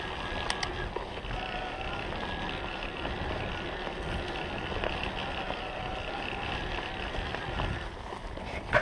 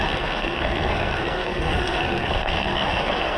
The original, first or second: first